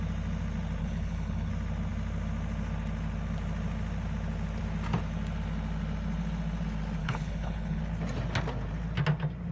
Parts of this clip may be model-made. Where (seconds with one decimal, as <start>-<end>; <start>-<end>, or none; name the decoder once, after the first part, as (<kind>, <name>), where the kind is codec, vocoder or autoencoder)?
0.8-1.5 (codec, HILCodec); 7.0-7.8